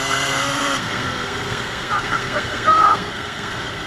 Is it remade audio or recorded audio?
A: remade